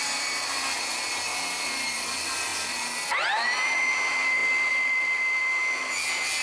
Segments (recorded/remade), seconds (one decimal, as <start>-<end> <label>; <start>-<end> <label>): 0.0-2.5 remade; 2.5-3.1 recorded; 3.1-6.4 remade